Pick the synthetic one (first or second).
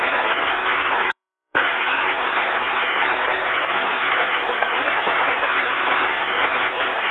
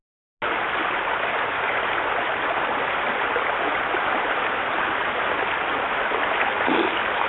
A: first